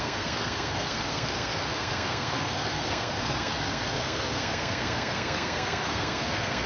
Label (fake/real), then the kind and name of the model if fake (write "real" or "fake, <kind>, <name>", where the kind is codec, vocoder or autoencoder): fake, codec, SNAC